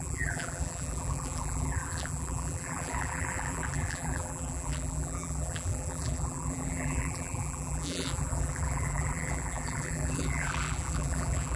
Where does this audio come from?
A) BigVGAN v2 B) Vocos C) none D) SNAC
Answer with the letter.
A